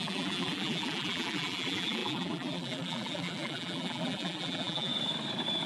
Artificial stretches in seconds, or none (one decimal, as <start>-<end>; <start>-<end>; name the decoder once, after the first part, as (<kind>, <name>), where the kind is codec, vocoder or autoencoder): 0.0-4.9 (vocoder, BigVGAN v2)